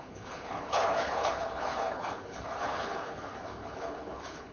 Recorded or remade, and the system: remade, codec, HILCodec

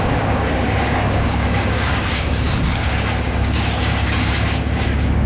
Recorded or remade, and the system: remade, codec, DAC